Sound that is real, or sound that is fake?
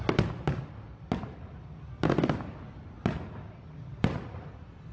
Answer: real